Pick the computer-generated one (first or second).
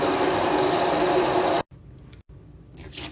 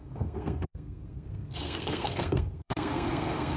second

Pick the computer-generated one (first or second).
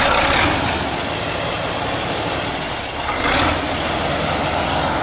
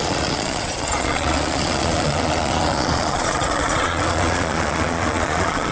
second